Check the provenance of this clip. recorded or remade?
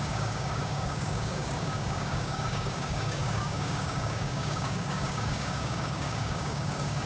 remade